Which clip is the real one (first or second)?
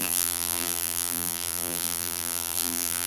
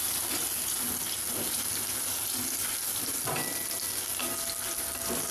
second